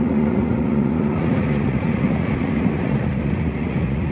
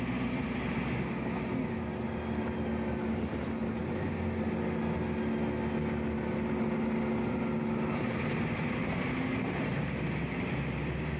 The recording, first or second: second